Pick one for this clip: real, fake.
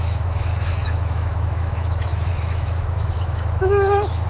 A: fake